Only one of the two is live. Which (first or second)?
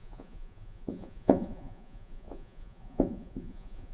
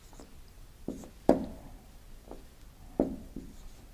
second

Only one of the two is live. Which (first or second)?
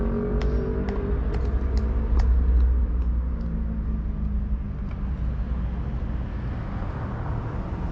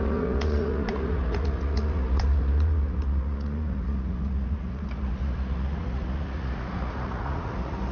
first